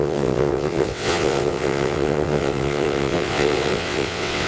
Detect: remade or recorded remade